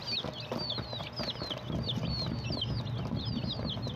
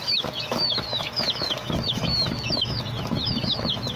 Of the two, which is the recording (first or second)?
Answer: first